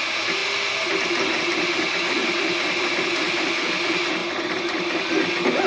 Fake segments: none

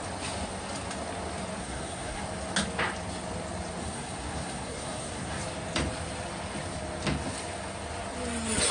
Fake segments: 1.6-2.2; 3.8-5.4

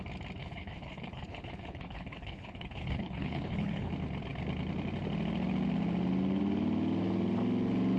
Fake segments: 0.4-3.9

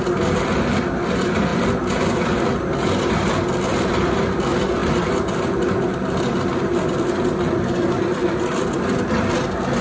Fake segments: 4.8-5.3; 5.9-9.0

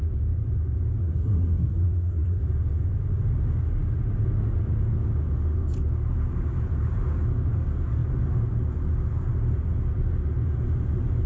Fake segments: 1.0-2.4

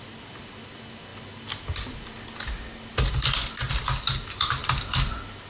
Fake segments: none